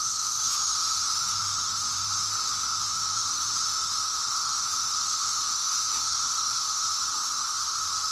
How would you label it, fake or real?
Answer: fake